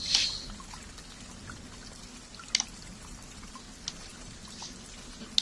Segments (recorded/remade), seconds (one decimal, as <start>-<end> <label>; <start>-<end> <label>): 0.0-5.4 recorded